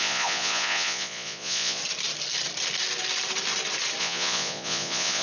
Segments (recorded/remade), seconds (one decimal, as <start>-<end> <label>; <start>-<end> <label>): 0.0-1.8 remade; 1.8-4.0 recorded; 4.0-5.2 remade